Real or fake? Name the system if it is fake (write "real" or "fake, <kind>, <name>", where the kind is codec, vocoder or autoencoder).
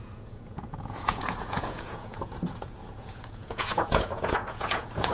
fake, vocoder, Vocos